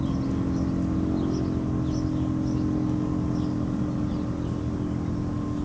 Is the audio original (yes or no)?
yes